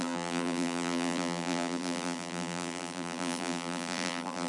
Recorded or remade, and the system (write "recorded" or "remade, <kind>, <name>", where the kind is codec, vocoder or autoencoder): remade, vocoder, BigVGAN v2